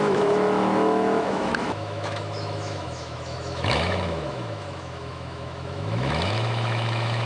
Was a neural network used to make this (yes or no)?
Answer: yes